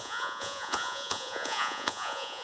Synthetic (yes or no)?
yes